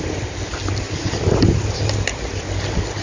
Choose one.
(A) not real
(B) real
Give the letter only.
B